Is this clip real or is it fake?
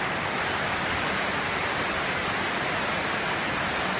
real